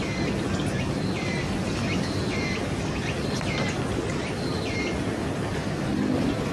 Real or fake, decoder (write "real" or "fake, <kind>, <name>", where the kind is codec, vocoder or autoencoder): real